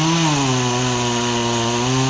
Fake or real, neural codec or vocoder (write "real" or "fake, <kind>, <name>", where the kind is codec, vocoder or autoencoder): real